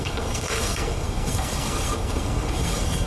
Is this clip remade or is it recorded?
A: remade